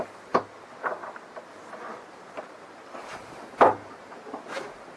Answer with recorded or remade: recorded